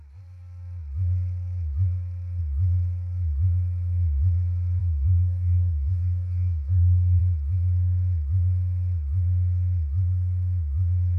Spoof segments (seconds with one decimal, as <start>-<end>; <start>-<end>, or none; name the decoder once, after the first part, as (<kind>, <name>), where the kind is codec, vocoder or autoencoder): 4.8-7.2 (codec, DAC)